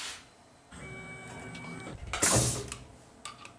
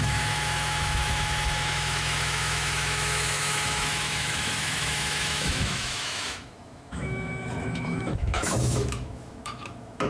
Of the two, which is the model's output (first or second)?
second